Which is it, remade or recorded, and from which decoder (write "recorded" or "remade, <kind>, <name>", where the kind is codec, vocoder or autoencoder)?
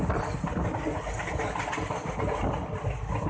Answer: recorded